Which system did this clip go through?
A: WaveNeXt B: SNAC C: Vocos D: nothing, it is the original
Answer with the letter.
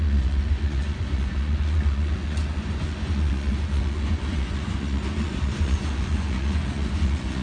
C